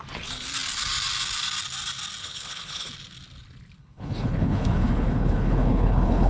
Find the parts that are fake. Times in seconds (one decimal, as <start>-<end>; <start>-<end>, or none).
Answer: 2.2-2.9; 3.8-6.3